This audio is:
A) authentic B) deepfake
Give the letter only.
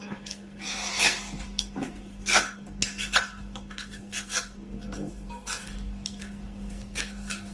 B